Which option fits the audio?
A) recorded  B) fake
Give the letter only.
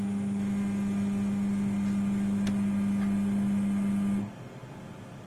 A